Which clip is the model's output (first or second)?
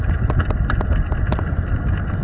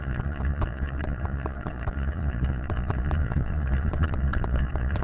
second